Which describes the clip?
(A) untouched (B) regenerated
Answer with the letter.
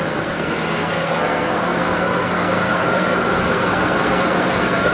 B